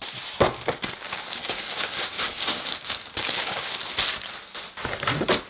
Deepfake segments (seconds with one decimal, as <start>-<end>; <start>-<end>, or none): 1.4-3.7